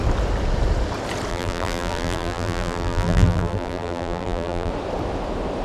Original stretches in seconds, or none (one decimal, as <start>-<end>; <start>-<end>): 0.0-1.3; 4.7-5.6